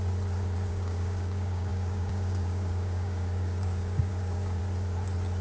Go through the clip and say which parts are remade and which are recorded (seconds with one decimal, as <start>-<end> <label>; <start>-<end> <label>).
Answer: 0.0-0.7 recorded; 0.7-4.6 remade; 4.6-5.4 recorded